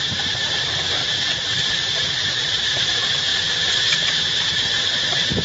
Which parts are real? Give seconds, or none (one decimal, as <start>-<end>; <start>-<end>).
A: 3.3-4.1